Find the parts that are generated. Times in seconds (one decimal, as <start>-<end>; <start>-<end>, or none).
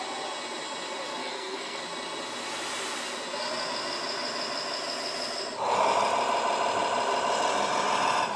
1.2-1.8